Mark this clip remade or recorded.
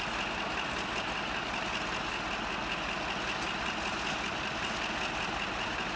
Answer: recorded